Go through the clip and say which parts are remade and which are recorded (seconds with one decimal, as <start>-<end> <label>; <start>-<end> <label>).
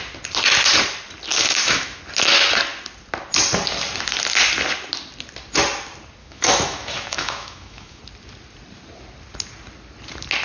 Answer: 0.0-1.3 recorded; 1.3-2.0 remade; 2.0-6.2 recorded; 6.2-8.0 remade; 8.0-10.4 recorded